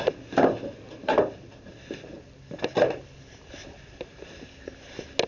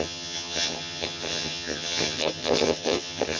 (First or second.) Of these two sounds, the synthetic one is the second